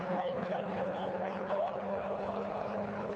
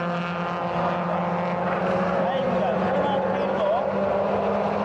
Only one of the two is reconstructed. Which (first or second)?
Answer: first